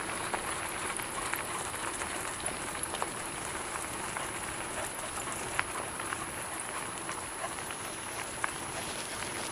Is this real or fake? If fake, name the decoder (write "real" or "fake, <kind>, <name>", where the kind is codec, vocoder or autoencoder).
real